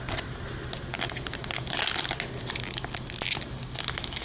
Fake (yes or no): no